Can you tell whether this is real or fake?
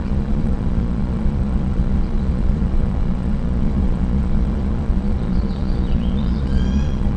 fake